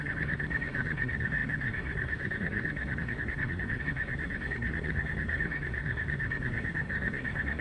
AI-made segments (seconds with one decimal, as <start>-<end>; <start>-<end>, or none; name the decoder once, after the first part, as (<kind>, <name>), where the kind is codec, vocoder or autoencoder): 0.0-7.6 (codec, SNAC)